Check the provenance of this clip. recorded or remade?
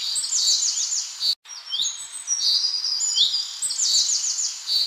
recorded